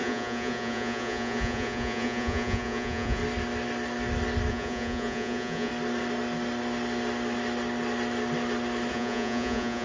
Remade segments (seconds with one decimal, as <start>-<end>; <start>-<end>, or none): 0.0-3.2; 4.5-5.7; 8.9-9.8